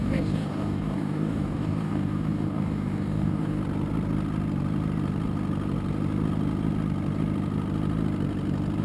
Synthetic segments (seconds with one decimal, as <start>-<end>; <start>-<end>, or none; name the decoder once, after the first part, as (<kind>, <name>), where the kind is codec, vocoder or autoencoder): 0.0-3.6 (codec, DAC)